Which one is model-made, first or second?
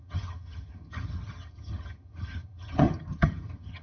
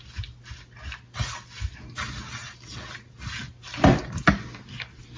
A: first